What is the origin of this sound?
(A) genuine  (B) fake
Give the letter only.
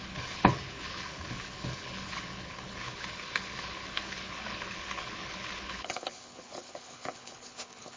B